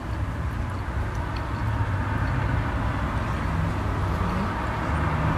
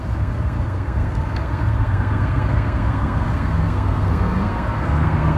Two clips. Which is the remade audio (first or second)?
second